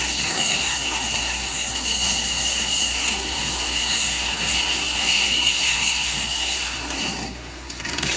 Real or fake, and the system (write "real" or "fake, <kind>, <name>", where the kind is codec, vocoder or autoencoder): fake, codec, SNAC